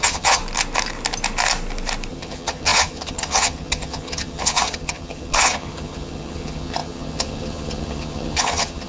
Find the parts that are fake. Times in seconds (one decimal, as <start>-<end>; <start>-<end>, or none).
0.0-0.4; 2.1-8.9